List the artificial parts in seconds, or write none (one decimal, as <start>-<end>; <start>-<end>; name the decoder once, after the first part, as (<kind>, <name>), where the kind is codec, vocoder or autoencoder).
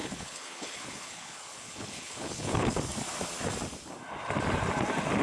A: 0.0-2.8 (codec, HILCodec)